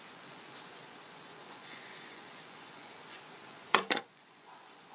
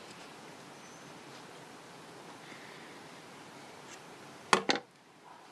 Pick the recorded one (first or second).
second